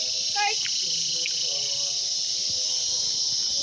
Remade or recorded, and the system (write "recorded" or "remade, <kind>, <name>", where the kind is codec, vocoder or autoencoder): recorded